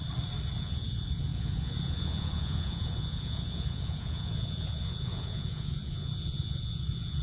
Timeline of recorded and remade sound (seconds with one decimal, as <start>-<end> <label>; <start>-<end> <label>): 0.0-0.6 recorded; 0.6-7.2 remade